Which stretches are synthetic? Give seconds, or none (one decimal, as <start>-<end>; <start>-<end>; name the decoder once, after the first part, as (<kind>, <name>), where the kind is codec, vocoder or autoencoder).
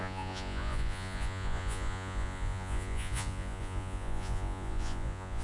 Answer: 0.0-5.4 (vocoder, Vocos)